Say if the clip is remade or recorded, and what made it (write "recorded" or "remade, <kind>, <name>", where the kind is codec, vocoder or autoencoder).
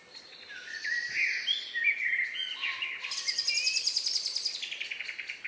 recorded